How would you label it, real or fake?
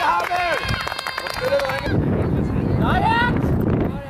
fake